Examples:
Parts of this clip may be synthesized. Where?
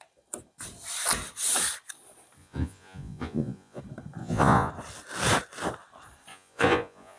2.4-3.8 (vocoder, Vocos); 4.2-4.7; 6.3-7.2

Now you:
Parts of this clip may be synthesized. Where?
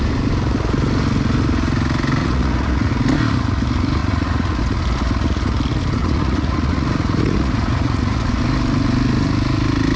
2.2-2.9 (vocoder, Vocos); 4.0-4.6; 6.0-8.4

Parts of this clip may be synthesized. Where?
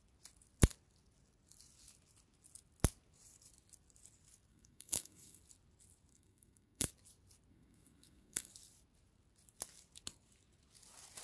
4.5-5.4 (codec, SNAC); 6.1-6.9; 7.5-8.5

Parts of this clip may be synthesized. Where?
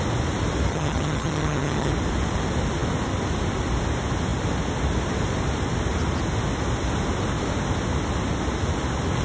0.7-1.9 (vocoder, HiFi-GAN)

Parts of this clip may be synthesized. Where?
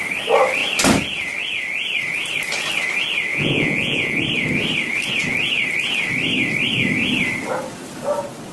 3.3-4.2 (vocoder, Vocos)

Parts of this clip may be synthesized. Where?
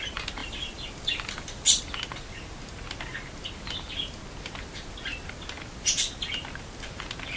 0.4-1.8 (vocoder, BigVGAN v2)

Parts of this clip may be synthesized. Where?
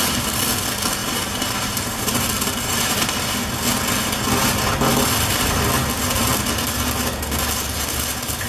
1.0-3.1 (vocoder, BigVGAN v2)